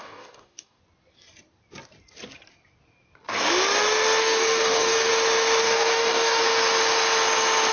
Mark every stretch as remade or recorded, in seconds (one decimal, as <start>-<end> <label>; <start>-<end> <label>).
0.0-0.8 remade; 0.8-4.2 recorded; 4.2-5.1 remade; 5.1-5.6 recorded; 5.6-6.4 remade; 6.4-7.7 recorded